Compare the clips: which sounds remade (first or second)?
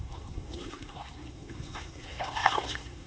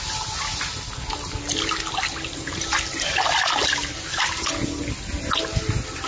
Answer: first